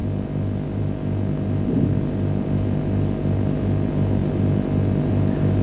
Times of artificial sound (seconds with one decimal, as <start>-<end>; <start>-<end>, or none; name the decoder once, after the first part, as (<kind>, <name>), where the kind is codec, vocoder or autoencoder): none